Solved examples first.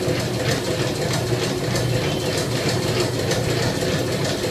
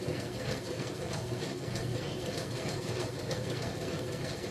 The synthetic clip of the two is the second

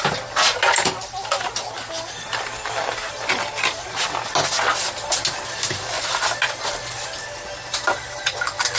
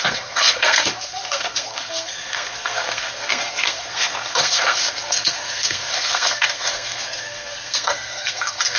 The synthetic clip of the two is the second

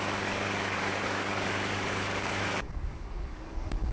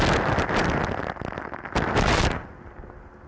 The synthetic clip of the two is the first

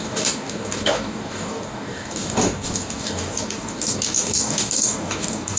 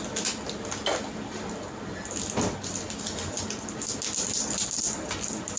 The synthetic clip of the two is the first